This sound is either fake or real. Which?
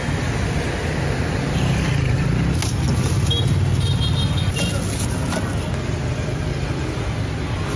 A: real